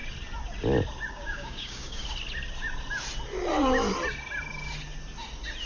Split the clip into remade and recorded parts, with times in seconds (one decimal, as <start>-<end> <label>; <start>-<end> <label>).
0.0-1.1 recorded; 1.1-2.0 remade; 2.0-5.7 recorded